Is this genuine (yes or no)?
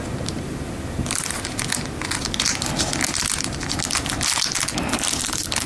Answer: yes